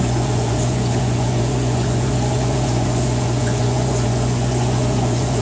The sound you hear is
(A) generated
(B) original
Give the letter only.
A